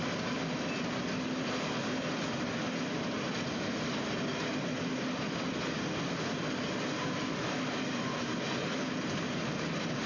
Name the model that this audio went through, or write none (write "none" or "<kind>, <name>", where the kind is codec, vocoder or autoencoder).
none